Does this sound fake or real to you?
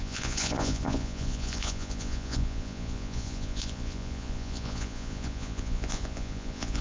fake